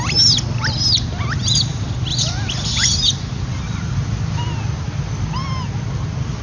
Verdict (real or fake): real